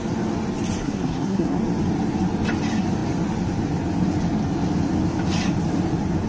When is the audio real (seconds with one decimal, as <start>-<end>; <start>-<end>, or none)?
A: 0.0-0.8; 1.6-6.3